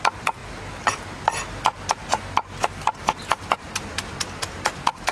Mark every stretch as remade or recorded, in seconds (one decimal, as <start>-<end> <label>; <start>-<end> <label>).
0.0-5.1 recorded